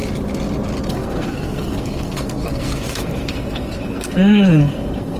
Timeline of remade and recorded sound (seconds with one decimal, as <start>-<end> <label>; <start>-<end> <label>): 0.0-0.9 recorded; 0.9-5.2 remade

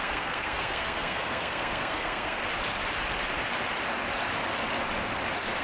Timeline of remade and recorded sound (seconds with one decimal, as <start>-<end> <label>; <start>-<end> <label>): 0.0-2.4 remade; 2.4-5.6 recorded

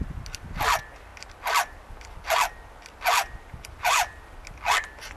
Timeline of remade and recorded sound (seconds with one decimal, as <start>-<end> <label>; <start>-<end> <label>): 0.0-5.2 recorded

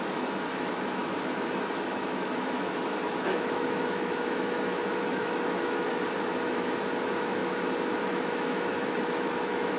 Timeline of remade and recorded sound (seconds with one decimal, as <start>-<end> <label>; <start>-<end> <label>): 0.0-7.4 remade; 7.4-8.0 recorded; 8.0-9.8 remade

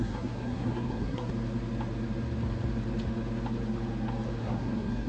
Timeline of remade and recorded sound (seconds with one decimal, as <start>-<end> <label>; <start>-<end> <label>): 0.0-1.3 remade; 1.3-4.4 recorded; 4.4-5.1 remade

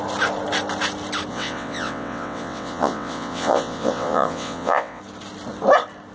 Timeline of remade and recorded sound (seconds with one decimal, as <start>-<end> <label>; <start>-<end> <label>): 0.0-1.3 recorded; 1.3-5.0 remade; 5.0-6.1 recorded